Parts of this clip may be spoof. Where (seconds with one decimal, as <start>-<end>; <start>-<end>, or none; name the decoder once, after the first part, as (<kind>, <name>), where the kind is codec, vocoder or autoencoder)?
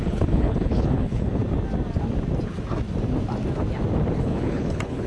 0.0-1.4 (codec, HILCodec); 4.2-5.1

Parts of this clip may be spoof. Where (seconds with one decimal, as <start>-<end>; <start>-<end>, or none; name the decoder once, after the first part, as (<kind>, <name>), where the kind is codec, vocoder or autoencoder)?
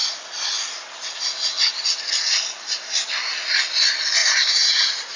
4.2-5.2 (vocoder, Vocos)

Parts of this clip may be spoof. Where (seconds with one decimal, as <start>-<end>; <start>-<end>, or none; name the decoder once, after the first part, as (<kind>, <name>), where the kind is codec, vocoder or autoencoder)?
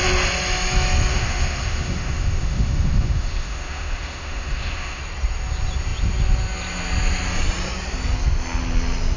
1.1-5.0 (autoencoder, DAC-VAE)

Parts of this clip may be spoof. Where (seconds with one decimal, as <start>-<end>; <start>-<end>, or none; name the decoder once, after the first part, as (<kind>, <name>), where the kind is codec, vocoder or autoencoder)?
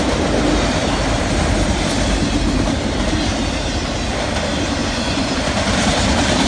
4.8-5.3 (vocoder, Vocos)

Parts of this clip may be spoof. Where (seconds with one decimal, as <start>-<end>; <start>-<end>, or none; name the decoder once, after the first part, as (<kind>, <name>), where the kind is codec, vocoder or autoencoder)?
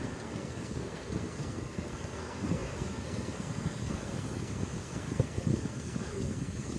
0.0-6.8 (codec, SNAC)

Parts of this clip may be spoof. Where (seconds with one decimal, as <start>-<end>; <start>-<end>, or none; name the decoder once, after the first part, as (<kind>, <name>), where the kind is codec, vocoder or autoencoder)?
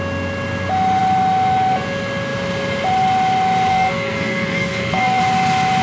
3.7-5.2 (codec, SNAC)